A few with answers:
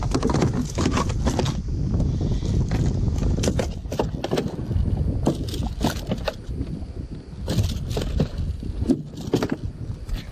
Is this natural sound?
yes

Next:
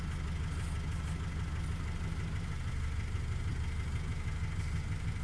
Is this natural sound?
yes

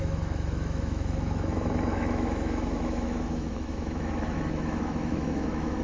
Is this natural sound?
no